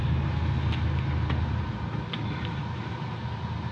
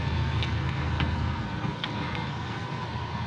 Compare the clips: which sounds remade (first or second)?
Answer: second